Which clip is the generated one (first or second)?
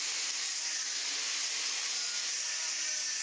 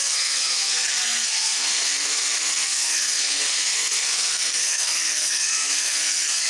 second